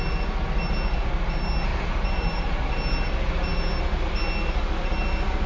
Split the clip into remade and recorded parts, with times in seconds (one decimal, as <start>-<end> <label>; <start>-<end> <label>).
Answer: 0.0-1.7 recorded; 1.7-2.6 remade; 2.6-5.5 recorded